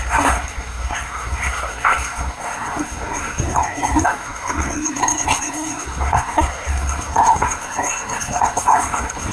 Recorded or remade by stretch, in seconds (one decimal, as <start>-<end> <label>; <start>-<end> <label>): 0.0-9.3 remade